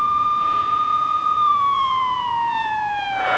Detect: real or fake fake